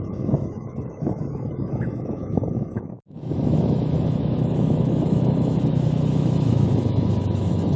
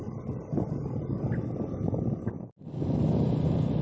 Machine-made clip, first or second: first